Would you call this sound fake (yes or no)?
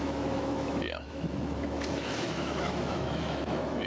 yes